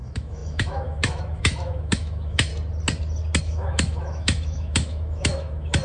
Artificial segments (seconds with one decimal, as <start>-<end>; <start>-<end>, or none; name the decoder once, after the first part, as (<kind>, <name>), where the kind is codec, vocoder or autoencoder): 0.0-2.5 (autoencoder, DAC-VAE); 3.4-5.8